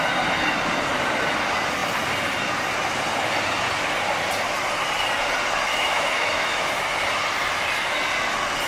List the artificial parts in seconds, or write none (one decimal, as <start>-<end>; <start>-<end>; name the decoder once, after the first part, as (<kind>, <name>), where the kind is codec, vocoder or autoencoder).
5.7-6.7 (autoencoder, DAC-VAE)